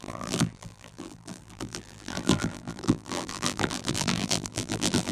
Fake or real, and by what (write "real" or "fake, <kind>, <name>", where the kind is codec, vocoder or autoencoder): fake, vocoder, BigVGAN v2